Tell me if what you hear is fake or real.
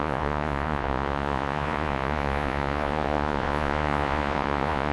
fake